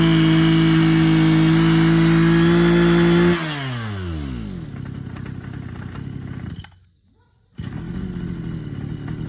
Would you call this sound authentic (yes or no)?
yes